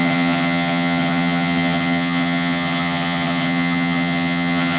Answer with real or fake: fake